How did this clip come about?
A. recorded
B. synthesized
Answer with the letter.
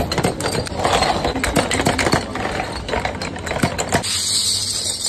A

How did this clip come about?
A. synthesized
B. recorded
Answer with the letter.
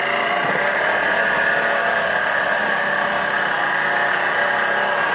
B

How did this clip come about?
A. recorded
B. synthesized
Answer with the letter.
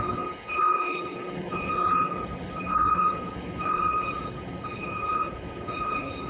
B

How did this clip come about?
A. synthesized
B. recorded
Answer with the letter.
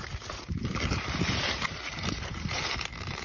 A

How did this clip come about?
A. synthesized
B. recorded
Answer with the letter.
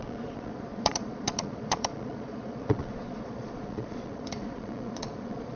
A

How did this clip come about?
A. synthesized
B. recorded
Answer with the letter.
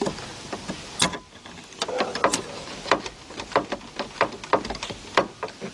B